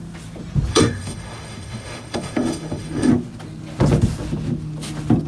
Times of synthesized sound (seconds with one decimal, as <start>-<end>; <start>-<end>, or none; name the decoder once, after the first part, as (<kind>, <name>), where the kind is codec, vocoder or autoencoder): 0.7-3.1 (autoencoder, DAC-VAE)